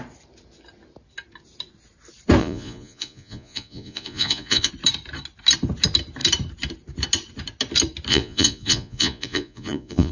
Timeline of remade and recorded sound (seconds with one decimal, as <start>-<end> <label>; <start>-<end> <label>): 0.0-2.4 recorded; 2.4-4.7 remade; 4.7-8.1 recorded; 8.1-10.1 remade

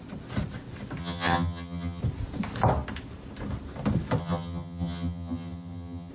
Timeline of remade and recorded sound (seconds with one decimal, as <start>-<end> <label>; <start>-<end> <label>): 0.0-1.0 recorded; 1.0-2.0 remade; 2.0-4.2 recorded; 4.2-6.1 remade

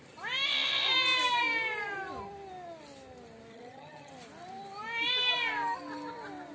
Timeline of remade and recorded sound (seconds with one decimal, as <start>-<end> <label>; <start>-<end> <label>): 0.0-3.5 recorded; 3.5-4.1 remade; 4.1-6.5 recorded

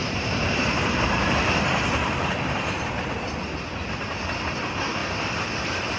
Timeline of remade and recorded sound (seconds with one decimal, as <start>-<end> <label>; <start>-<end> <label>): 0.0-2.9 remade; 2.9-6.0 recorded